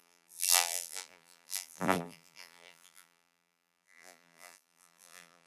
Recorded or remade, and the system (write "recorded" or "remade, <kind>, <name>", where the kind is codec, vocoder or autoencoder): remade, vocoder, BigVGAN v2